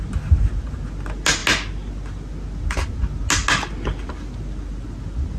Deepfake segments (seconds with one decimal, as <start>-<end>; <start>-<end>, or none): none